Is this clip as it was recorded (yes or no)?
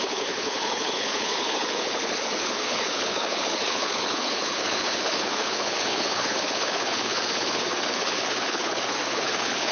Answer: no